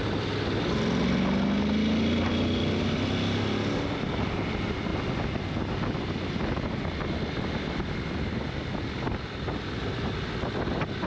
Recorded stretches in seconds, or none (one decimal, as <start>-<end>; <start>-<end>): 0.0-11.1